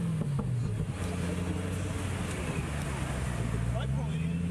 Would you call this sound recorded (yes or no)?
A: yes